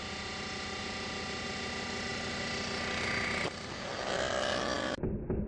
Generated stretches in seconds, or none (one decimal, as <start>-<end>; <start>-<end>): none